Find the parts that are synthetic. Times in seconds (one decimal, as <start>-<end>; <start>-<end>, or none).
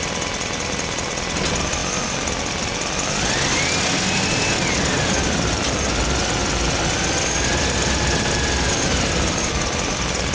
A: none